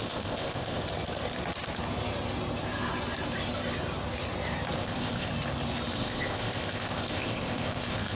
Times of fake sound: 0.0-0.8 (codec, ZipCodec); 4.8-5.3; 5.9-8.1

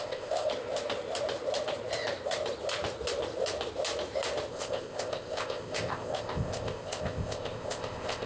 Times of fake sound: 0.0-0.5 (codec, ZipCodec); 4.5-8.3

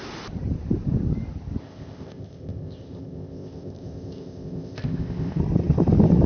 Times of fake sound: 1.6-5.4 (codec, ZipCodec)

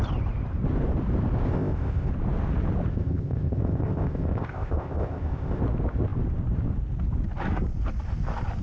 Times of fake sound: 1.5-2.1 (codec, ZipCodec); 2.9-5.6